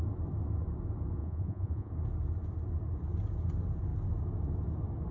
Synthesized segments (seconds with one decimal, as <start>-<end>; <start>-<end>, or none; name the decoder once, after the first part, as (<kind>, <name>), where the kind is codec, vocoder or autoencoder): 1.2-1.9 (vocoder, Vocos)